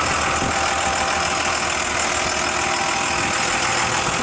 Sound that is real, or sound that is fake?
real